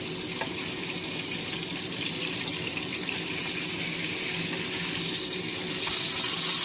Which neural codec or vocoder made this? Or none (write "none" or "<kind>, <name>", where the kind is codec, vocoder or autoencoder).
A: none